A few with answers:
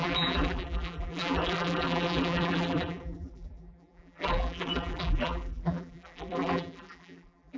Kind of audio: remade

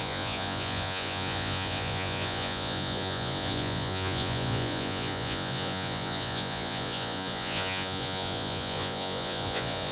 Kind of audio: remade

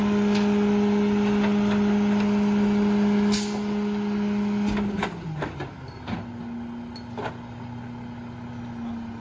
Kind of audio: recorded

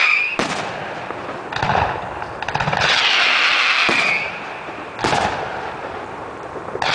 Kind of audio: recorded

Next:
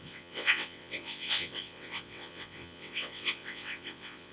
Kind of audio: remade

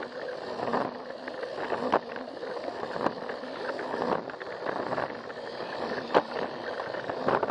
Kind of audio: recorded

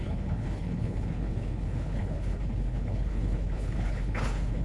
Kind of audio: remade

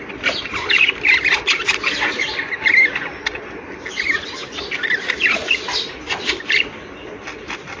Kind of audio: recorded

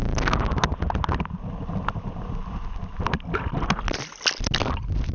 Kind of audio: recorded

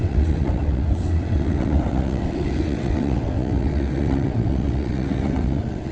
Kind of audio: remade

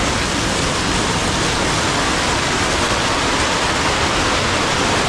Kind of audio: recorded